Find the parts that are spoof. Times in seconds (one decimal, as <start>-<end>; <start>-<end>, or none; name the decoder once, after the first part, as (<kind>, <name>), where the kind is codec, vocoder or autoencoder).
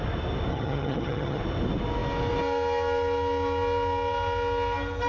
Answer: 0.5-1.4 (vocoder, HiFi-GAN)